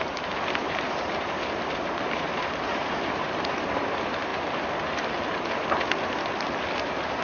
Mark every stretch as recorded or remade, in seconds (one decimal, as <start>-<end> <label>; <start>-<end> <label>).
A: 0.0-4.3 remade; 4.3-6.8 recorded; 6.8-7.2 remade